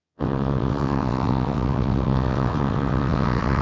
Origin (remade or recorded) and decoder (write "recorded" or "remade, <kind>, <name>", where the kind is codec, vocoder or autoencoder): remade, vocoder, WaveNeXt